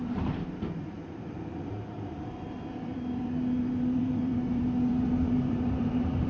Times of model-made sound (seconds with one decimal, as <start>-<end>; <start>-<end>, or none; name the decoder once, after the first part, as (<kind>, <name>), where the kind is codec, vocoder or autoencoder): 0.0-6.3 (vocoder, BigVGAN v2)